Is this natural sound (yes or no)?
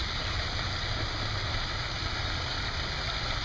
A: yes